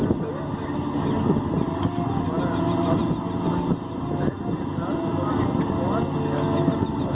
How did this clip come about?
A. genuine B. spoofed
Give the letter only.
A